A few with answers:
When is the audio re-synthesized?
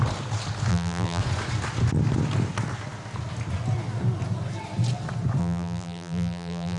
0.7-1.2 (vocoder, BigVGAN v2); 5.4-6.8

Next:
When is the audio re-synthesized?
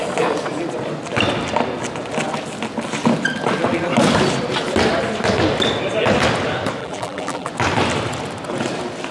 6.8-7.5 (vocoder, BigVGAN v2)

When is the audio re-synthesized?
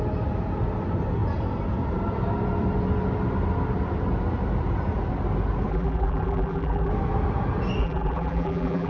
5.7-6.9 (vocoder, BigVGAN v2); 7.8-8.9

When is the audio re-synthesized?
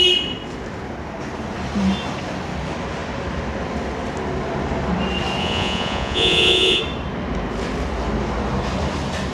5.4-6.8 (vocoder, Vocos)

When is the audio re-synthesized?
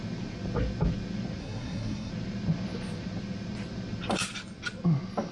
1.4-2.1 (codec, SNAC)